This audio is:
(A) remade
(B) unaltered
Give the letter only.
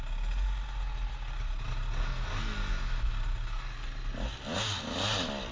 B